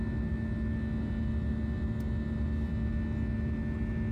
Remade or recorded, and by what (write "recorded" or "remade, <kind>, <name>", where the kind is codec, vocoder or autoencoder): recorded